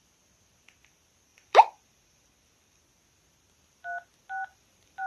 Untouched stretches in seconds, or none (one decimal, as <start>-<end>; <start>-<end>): 0.0-1.3; 2.8-4.5